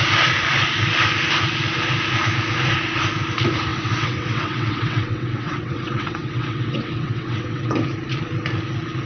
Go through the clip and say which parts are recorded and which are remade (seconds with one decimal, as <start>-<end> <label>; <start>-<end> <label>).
0.0-3.7 recorded; 3.7-7.8 remade; 7.8-9.1 recorded